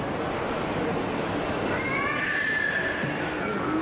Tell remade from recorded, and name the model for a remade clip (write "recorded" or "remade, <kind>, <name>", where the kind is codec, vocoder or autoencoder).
recorded